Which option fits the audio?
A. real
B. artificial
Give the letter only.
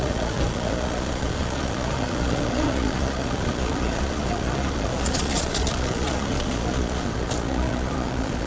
B